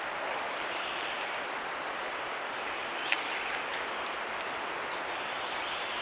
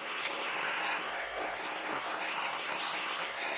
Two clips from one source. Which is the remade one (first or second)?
second